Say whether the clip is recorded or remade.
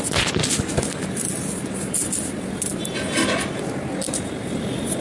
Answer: recorded